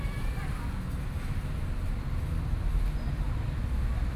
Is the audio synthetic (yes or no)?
no